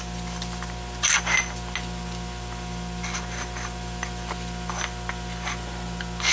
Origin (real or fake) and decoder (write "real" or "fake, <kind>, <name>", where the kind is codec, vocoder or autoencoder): real